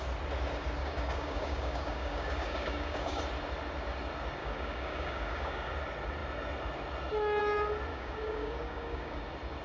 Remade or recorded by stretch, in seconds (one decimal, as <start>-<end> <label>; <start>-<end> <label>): 0.0-0.8 recorded; 0.8-3.2 remade; 3.2-4.4 recorded; 4.4-5.7 remade; 5.7-7.9 recorded; 7.9-9.2 remade; 9.2-9.6 recorded